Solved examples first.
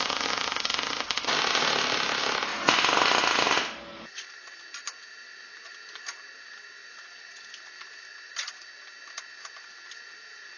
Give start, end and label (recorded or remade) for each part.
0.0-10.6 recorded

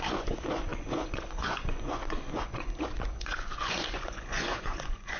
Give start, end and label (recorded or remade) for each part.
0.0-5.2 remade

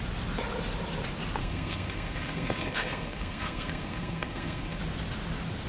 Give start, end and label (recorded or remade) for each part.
0.0-1.4 recorded; 1.4-4.8 remade; 4.8-5.7 recorded

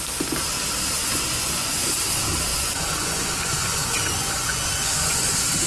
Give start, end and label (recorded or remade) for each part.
0.0-1.0 recorded; 1.0-2.0 remade; 2.0-2.5 recorded; 2.5-5.3 remade; 5.3-5.7 recorded

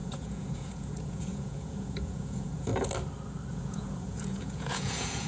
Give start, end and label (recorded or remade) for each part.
0.0-2.7 remade; 2.7-3.5 recorded; 3.5-5.3 remade

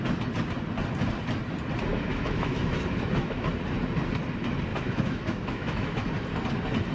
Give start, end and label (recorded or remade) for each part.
0.0-1.9 recorded; 1.9-3.5 remade; 3.5-4.7 recorded; 4.7-6.1 remade; 6.1-6.9 recorded

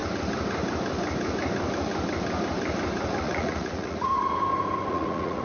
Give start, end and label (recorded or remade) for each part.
0.0-3.2 recorded; 3.2-4.1 remade; 4.1-4.9 recorded; 4.9-5.4 remade

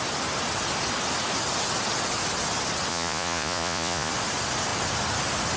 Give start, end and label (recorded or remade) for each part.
0.0-2.9 recorded; 2.9-4.1 remade; 4.1-5.6 recorded